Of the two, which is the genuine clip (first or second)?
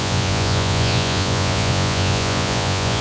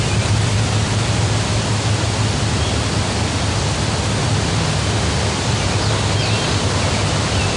second